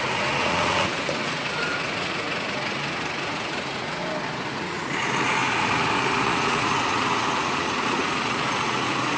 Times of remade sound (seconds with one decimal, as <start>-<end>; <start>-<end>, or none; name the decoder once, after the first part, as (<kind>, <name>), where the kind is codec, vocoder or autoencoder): 0.0-4.0 (vocoder, Vocos); 4.5-9.2